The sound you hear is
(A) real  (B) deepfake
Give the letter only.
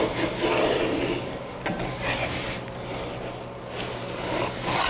A